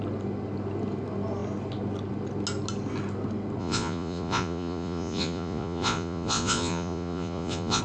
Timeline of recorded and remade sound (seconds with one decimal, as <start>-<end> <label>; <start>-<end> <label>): 0.0-3.6 recorded; 3.6-7.8 remade